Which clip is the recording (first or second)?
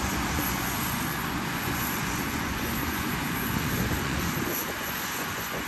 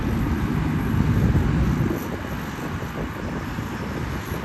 second